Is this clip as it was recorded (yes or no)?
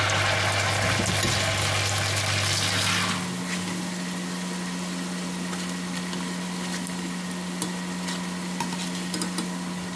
yes